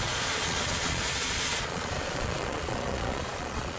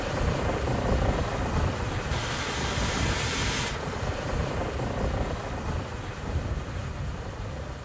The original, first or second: second